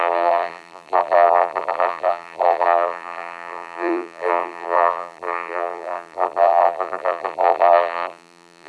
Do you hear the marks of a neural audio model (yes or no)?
yes